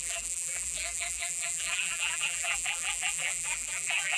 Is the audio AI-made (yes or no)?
yes